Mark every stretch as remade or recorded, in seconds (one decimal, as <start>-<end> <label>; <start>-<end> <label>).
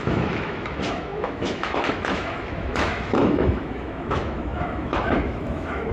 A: 0.0-5.9 remade